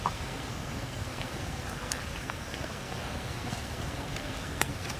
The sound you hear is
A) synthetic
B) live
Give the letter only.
A